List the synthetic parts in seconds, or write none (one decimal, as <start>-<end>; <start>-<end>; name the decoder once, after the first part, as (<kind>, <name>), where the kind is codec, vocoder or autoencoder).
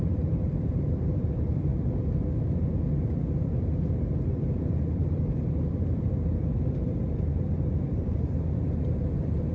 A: 0.0-1.7 (vocoder, BigVGAN v2); 4.3-9.5